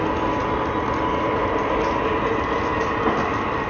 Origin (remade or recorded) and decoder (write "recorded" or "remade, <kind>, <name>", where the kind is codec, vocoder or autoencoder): recorded